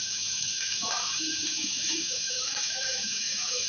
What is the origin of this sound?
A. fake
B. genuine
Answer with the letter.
A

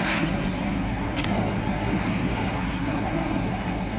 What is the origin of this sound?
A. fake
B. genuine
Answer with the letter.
A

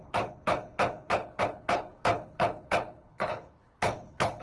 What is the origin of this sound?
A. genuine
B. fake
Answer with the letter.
B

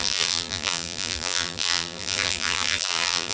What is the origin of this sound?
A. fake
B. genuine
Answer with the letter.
A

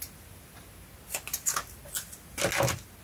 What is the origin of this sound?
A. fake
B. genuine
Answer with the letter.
B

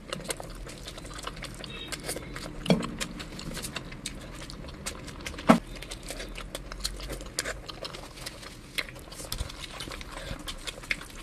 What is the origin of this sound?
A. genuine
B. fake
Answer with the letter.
A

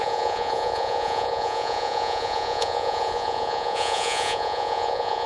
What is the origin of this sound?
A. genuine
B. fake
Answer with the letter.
B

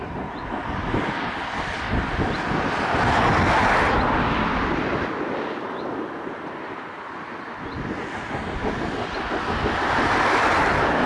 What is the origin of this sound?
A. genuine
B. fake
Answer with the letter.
A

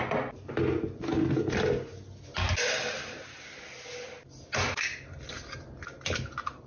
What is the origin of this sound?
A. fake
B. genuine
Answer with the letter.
B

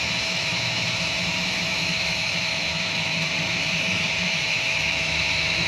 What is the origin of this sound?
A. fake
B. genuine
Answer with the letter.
A